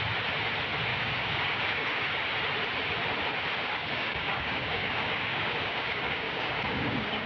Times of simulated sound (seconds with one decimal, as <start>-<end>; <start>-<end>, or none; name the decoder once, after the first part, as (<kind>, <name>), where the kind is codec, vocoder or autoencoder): 0.9-2.0 (codec, DAC); 3.6-7.3